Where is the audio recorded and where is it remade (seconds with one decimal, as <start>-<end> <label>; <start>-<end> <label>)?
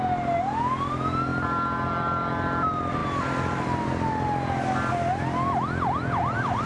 0.0-6.7 recorded